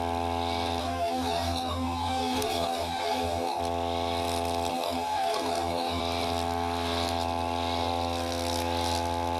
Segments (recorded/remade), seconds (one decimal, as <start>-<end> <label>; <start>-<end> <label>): 0.0-0.8 recorded; 0.8-3.6 remade; 3.6-4.7 recorded; 4.7-6.0 remade; 6.0-9.4 recorded